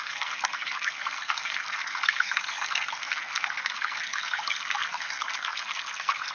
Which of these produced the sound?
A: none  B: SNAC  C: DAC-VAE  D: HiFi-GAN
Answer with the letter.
B